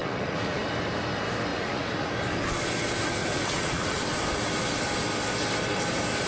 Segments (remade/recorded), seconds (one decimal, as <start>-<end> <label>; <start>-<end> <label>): 0.0-0.6 remade; 0.6-1.5 recorded; 1.5-2.1 remade; 2.1-3.2 recorded; 3.2-4.0 remade; 4.0-6.3 recorded

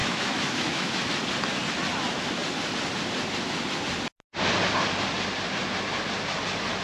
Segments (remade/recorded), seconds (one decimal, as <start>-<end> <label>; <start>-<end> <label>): 0.0-1.1 remade; 1.1-6.8 recorded

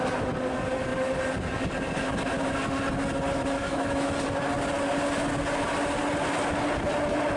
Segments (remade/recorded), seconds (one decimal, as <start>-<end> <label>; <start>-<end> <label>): 0.0-3.6 recorded; 3.6-4.1 remade; 4.1-7.4 recorded

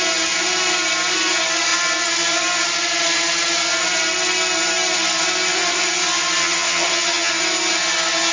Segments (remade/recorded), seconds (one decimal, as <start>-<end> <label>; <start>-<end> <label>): 0.0-6.4 recorded; 6.4-7.3 remade; 7.3-8.3 recorded